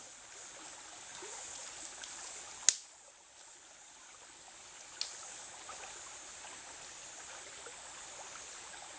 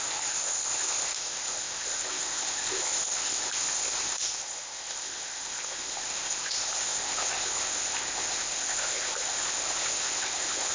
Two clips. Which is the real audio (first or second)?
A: first